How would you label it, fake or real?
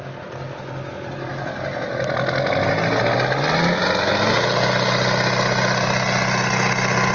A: real